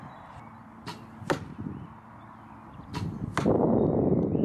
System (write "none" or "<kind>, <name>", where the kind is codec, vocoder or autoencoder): none